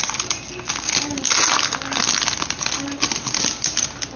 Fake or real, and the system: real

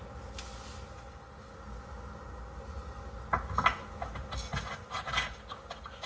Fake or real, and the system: real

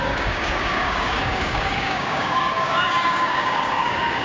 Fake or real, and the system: fake, codec, DAC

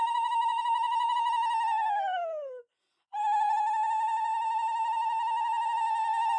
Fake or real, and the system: real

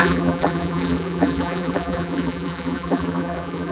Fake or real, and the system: fake, vocoder, BigVGAN v2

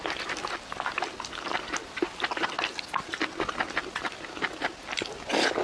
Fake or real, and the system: real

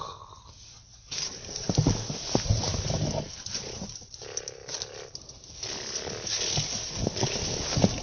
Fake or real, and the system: real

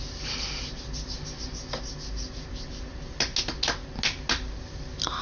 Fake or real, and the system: real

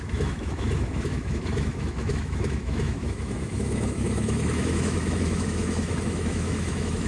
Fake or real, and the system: fake, autoencoder, DAC-VAE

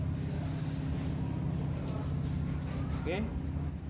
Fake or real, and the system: real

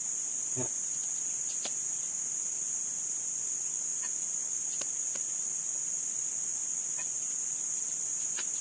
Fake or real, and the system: real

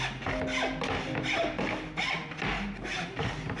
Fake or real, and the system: real